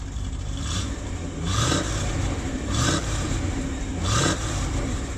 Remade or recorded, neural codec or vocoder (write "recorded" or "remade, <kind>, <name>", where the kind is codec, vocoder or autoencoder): remade, vocoder, BigVGAN v2